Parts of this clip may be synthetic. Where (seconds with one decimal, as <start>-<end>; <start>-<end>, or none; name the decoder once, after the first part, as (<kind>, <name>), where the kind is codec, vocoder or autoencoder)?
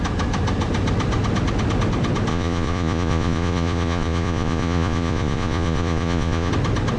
2.3-6.5 (vocoder, Vocos)